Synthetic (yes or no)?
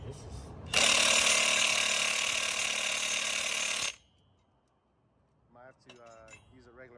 no